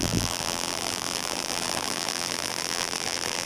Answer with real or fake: fake